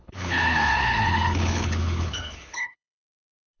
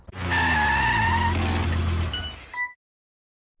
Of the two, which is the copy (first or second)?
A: first